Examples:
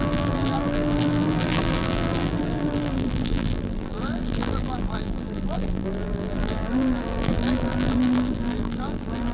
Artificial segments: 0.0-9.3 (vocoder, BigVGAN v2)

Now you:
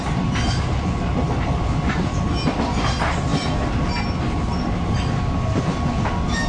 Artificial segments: none

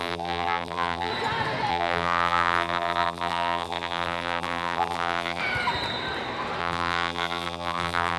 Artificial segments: 0.0-1.1 (vocoder, BigVGAN v2); 1.7-5.4; 6.6-8.2

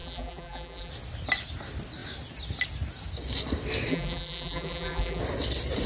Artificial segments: 0.0-0.9 (vocoder, BigVGAN v2); 3.9-5.2

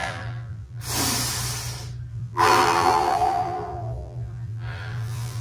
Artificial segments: 0.0-0.8 (vocoder, BigVGAN v2); 2.1-5.4

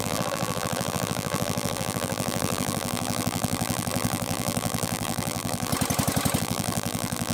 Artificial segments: 0.0-5.7 (vocoder, BigVGAN v2); 6.4-7.3

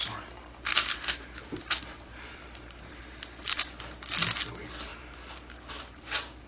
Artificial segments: 1.4-3.0 (vocoder, BigVGAN v2); 4.9-6.5